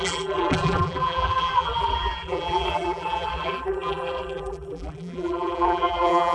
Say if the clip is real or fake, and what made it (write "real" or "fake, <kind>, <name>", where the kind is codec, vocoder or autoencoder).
fake, vocoder, BigVGAN v2